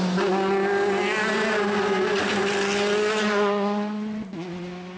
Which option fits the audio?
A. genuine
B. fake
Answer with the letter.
A